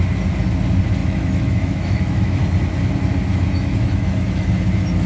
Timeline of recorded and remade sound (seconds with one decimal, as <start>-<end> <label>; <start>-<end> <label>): 0.0-1.0 recorded; 1.0-2.4 remade; 2.4-3.3 recorded; 3.3-4.5 remade; 4.5-5.1 recorded